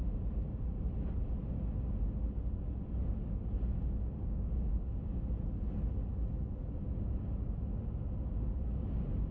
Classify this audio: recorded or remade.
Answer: recorded